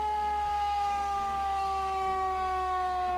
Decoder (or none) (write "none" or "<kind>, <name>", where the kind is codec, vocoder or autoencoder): codec, SNAC